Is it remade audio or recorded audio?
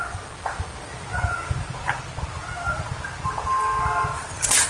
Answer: recorded